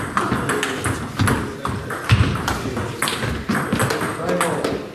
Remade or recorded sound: recorded